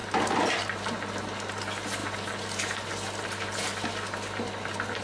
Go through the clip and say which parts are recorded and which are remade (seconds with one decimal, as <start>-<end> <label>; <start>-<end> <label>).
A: 0.0-5.0 recorded